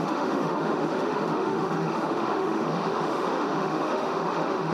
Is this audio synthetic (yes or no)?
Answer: yes